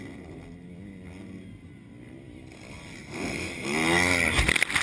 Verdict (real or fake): real